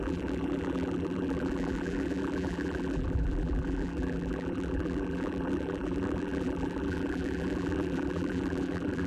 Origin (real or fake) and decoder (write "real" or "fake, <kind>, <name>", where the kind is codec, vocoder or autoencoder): fake, vocoder, BigVGAN v2